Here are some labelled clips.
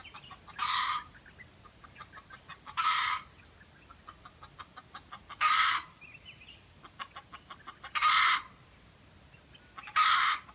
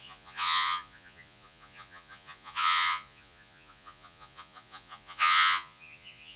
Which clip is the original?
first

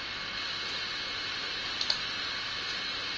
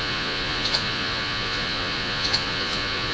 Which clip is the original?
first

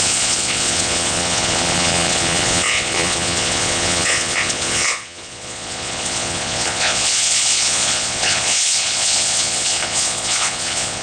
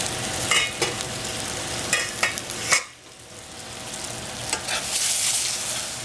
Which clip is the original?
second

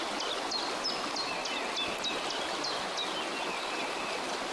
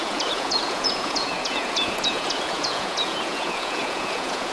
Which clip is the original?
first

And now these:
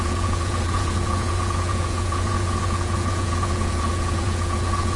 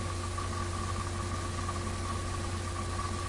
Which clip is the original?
second